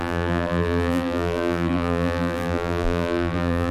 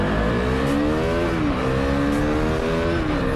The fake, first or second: first